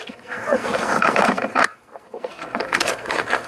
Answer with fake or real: fake